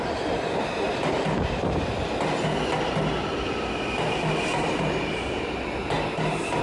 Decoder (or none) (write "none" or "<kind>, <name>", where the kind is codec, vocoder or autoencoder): none